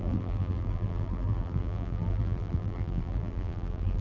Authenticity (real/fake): fake